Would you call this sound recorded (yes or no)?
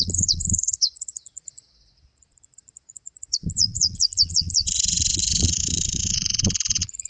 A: no